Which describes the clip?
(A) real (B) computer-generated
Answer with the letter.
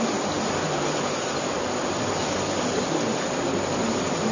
A